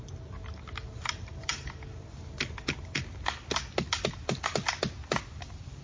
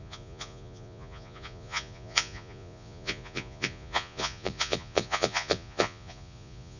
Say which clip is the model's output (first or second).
second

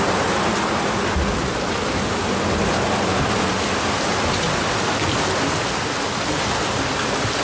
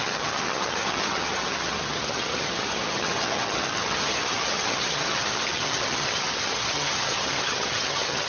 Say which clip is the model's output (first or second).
second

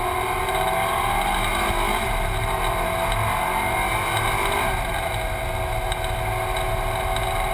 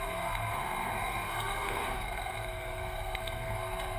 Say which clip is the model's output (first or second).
second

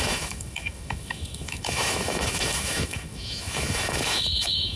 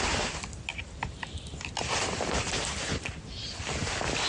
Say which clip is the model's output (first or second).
first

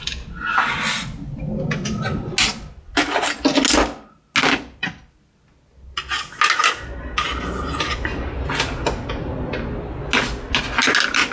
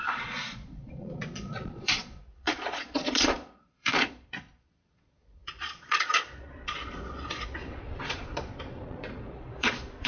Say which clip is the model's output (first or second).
second